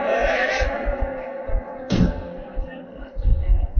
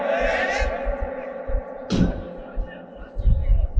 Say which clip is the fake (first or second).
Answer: first